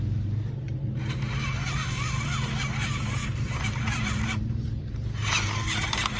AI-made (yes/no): yes